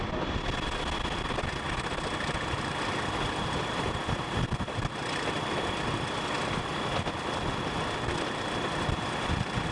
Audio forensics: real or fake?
real